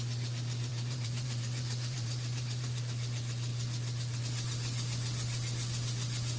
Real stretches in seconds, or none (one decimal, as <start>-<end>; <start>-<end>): 0.0-0.7; 2.8-6.4